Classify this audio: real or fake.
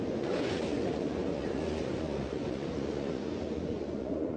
fake